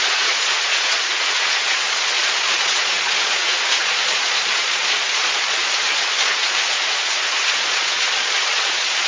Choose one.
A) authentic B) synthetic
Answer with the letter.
B